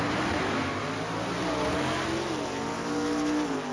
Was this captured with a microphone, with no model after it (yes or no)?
yes